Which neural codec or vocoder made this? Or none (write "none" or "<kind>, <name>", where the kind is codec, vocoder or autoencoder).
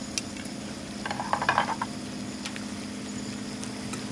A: none